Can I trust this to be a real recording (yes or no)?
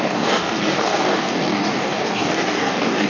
no